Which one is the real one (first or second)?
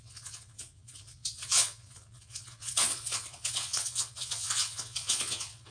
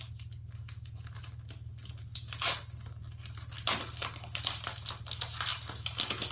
second